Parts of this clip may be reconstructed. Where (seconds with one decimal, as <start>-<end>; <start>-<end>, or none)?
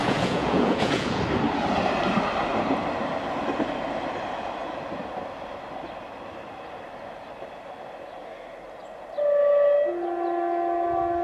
0.0-1.2